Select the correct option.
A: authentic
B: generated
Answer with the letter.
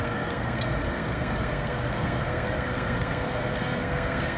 B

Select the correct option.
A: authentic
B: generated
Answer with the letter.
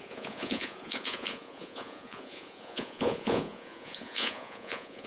B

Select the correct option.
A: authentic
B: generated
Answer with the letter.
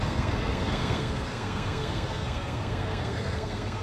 B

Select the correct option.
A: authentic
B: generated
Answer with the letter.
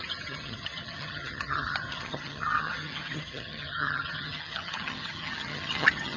B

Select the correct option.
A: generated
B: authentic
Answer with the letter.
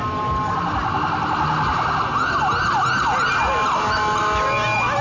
B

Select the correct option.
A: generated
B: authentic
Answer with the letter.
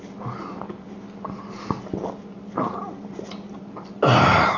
B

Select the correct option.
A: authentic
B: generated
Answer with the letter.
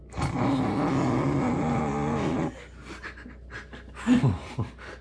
A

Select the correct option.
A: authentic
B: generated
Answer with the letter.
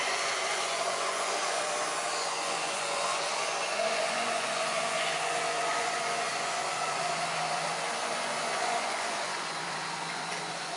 B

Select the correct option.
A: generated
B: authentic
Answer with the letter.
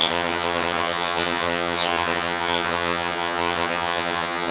A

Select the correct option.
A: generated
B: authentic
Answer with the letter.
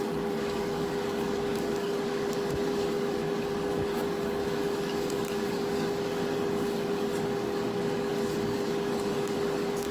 A